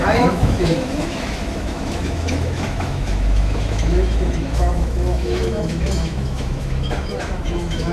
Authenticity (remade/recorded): remade